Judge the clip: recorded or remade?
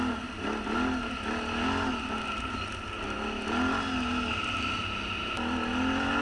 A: recorded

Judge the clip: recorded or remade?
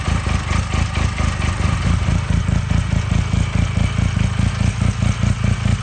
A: recorded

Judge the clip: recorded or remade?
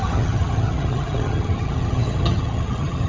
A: remade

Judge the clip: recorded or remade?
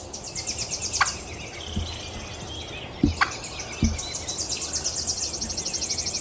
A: recorded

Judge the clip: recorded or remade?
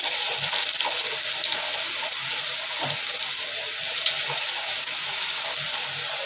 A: recorded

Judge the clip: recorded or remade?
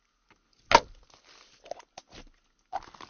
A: recorded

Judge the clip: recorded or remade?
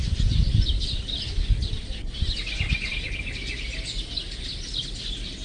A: recorded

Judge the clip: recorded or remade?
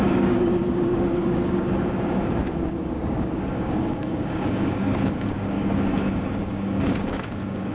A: remade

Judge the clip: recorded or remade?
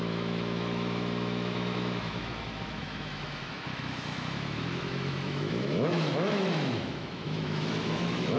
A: remade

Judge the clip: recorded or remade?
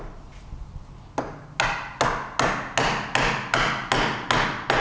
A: recorded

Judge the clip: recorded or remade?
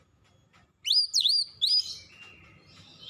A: recorded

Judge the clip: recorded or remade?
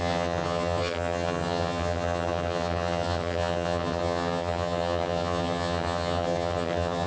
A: remade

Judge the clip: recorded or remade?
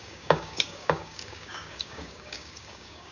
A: remade